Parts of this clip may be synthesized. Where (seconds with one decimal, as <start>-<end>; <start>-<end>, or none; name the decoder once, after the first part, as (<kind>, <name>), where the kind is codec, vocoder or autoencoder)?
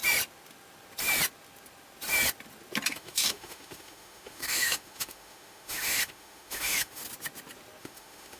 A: 2.9-7.0 (autoencoder, DAC-VAE); 7.8-8.4